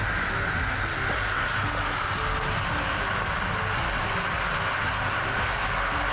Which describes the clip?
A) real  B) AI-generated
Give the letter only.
A